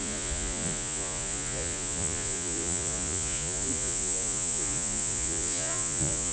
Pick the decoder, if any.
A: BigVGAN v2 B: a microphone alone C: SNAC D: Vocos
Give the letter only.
D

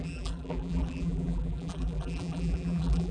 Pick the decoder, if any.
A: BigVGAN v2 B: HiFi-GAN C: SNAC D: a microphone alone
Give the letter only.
A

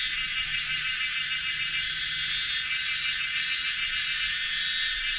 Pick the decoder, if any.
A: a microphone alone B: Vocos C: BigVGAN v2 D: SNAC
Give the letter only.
A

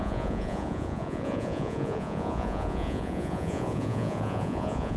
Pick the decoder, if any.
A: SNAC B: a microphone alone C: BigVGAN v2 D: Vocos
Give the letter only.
D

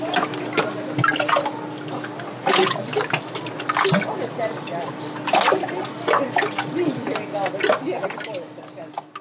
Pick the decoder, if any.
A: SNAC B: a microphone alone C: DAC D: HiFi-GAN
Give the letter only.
B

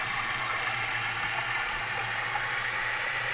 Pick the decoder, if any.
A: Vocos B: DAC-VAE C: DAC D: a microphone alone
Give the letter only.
D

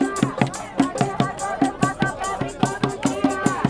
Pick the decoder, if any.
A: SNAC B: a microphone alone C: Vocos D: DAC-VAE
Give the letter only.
B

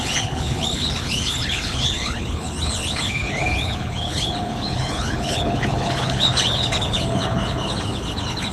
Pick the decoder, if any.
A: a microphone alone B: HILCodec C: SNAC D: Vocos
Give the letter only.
B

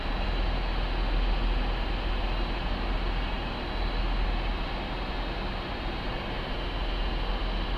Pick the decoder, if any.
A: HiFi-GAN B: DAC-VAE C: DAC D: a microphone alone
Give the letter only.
D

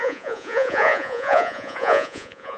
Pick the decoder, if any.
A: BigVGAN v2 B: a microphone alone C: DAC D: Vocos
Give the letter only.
D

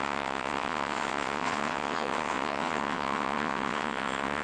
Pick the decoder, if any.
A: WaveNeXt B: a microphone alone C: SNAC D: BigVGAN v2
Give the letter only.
A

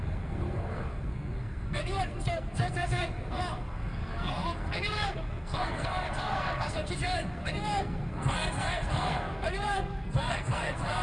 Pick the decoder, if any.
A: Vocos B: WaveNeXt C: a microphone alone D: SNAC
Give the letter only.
D